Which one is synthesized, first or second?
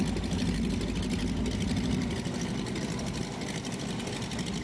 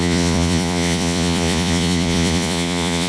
second